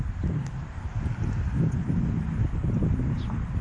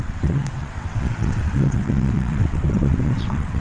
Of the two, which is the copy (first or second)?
second